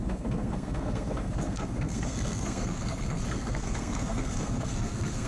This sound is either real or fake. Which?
fake